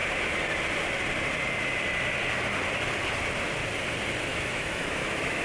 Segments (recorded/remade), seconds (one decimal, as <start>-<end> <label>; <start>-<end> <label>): 0.0-4.3 recorded; 4.3-5.4 remade